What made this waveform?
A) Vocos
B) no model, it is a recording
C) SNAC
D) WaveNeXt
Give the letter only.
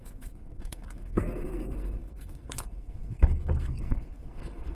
C